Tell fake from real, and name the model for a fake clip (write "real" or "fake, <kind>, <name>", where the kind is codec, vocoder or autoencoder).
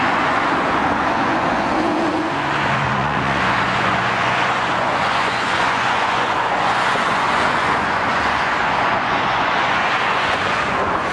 fake, vocoder, Vocos